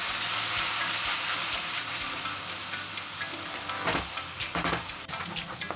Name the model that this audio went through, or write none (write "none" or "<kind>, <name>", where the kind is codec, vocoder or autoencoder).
none